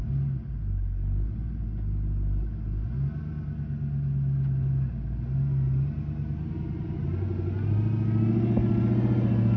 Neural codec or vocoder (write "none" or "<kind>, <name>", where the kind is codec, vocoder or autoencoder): none